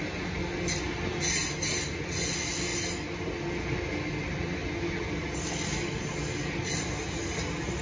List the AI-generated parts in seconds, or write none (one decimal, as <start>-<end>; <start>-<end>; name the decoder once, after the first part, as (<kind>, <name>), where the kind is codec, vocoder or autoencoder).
none

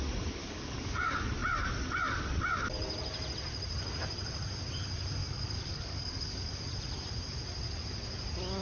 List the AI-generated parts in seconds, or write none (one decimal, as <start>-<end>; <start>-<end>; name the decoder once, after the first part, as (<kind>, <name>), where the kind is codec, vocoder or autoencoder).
0.4-1.1 (codec, DAC); 5.2-6.6

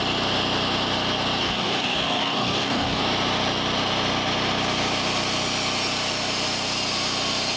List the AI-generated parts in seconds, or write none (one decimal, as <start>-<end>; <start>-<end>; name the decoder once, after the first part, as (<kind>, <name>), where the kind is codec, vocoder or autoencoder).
1.4-3.0 (codec, DAC)

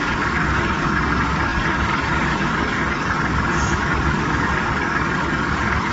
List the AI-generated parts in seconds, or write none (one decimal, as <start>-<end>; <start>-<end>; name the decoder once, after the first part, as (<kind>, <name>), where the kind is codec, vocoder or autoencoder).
0.0-5.9 (codec, DAC)

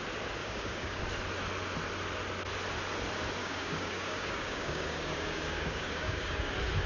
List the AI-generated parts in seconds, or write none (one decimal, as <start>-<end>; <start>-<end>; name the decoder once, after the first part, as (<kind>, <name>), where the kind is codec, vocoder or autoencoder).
0.4-1.0 (codec, DAC); 3.4-6.5

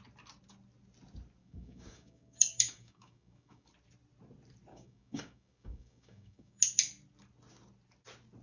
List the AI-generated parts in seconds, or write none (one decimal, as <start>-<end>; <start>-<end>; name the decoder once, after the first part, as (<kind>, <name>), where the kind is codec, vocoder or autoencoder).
1.4-3.7 (codec, DAC); 4.7-6.6

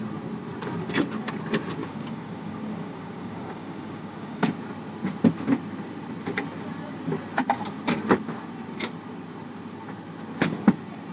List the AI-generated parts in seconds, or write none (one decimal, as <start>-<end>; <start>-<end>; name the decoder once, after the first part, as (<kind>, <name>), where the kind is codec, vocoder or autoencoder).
1.8-4.5 (codec, DAC)